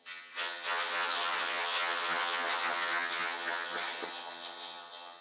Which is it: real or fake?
fake